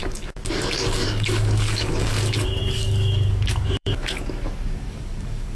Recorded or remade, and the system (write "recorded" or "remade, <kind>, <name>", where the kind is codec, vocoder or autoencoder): remade, codec, DAC